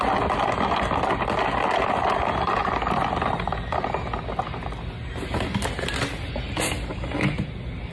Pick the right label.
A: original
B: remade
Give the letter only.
A